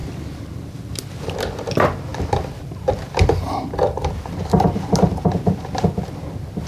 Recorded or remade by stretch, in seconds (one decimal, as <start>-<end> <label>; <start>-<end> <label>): 0.0-0.8 remade; 0.8-2.1 recorded; 2.1-5.5 remade; 5.5-6.7 recorded